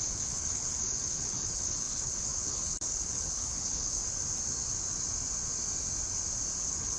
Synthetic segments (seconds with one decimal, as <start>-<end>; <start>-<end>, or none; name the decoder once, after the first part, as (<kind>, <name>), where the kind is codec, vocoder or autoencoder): 0.0-4.0 (codec, HILCodec); 6.6-7.0